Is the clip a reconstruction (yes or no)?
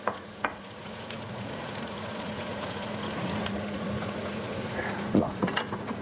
yes